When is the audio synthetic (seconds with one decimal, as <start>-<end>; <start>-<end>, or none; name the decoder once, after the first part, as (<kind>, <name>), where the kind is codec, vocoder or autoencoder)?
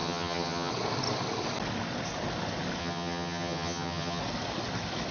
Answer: 0.0-0.7 (vocoder, HiFi-GAN); 2.8-4.2